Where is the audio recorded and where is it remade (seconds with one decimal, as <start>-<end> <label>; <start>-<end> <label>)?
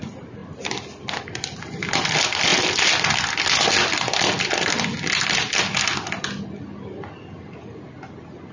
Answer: 0.0-8.5 recorded